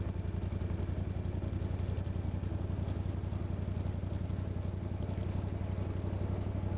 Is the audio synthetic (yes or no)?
no